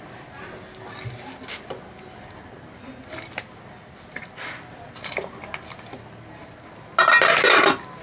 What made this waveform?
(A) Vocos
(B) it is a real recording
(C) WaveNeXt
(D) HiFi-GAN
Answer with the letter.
B